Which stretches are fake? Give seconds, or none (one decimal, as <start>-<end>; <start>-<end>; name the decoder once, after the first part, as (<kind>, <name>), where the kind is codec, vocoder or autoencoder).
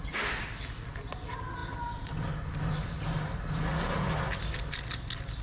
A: none